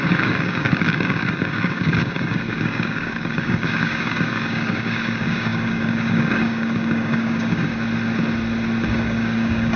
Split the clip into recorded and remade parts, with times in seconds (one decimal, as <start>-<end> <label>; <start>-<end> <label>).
0.0-7.7 remade; 7.7-8.9 recorded; 8.9-9.8 remade